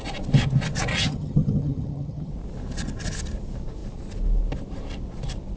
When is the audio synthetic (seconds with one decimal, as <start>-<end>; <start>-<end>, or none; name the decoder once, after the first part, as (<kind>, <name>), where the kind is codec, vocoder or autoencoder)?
0.9-2.3 (vocoder, HiFi-GAN)